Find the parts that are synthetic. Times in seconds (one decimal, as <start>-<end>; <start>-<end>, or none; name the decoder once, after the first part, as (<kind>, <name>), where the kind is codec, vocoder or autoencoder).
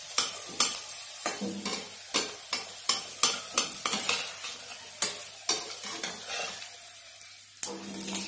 none